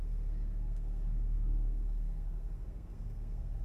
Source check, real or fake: fake